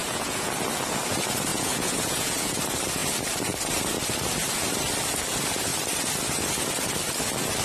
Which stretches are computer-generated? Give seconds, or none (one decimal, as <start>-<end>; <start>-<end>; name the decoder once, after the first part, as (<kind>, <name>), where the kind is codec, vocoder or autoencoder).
0.0-0.5 (vocoder, Vocos); 1.5-2.6

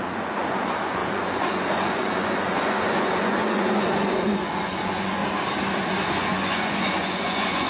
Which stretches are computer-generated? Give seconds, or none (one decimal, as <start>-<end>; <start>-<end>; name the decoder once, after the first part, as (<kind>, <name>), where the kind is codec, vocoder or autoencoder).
0.0-5.2 (vocoder, Vocos); 5.9-7.7

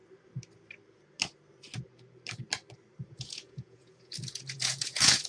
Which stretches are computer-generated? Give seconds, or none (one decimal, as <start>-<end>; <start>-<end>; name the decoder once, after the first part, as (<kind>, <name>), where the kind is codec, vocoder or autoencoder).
3.1-5.3 (vocoder, Vocos)